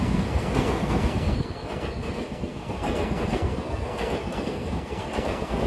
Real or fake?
fake